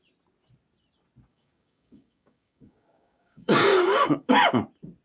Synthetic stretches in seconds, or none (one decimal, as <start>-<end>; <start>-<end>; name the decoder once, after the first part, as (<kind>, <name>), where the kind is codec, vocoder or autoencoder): 1.3-4.3 (codec, DAC)